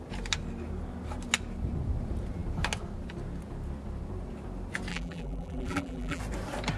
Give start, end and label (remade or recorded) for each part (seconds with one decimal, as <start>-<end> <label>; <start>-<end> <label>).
0.0-4.9 recorded; 4.9-6.2 remade; 6.2-6.8 recorded